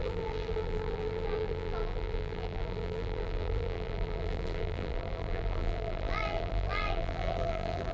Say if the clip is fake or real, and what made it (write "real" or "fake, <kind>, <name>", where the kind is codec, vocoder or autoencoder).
fake, vocoder, BigVGAN v2